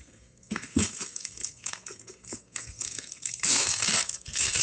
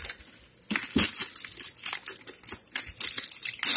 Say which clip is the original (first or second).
second